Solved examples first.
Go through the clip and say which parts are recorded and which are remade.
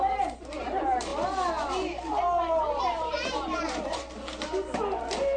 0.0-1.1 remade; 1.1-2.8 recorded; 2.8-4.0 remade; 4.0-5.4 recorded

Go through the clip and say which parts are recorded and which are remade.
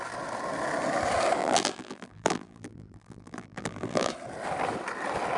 0.0-1.4 recorded; 1.4-4.1 remade; 4.1-5.4 recorded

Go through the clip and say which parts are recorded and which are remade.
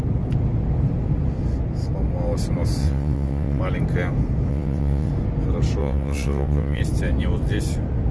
0.0-2.8 recorded; 2.8-3.6 remade; 3.6-4.5 recorded; 4.5-5.1 remade; 5.1-5.8 recorded; 5.8-6.8 remade; 6.8-8.1 recorded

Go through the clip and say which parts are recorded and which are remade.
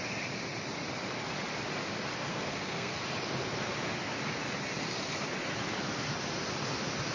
0.0-2.3 recorded; 2.3-3.0 remade; 3.0-7.1 recorded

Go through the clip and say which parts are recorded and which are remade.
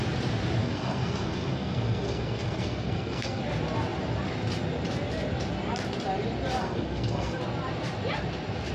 0.0-0.6 recorded; 0.6-3.4 remade; 3.4-6.6 recorded; 6.6-7.4 remade; 7.4-8.7 recorded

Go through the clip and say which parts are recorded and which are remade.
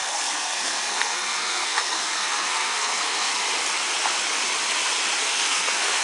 0.0-3.4 remade; 3.4-5.2 recorded; 5.2-6.0 remade